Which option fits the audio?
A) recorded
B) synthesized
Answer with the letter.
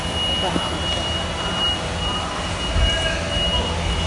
A